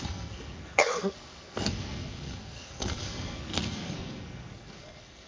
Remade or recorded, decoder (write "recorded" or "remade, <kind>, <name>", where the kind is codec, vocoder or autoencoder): remade, codec, SNAC